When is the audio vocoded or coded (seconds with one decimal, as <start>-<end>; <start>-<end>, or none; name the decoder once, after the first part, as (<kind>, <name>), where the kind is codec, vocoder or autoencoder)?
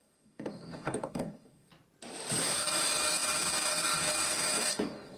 0.0-1.7 (codec, DAC); 2.4-5.2